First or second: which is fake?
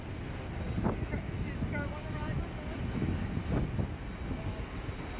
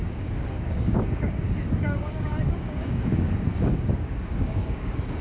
second